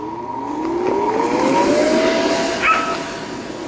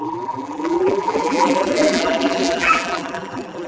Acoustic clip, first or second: first